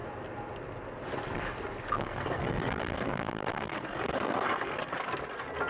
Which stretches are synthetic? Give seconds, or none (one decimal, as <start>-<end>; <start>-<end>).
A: 2.0-4.9